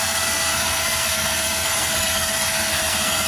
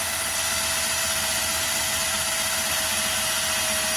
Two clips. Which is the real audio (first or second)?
second